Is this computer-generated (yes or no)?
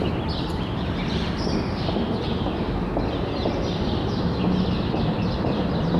no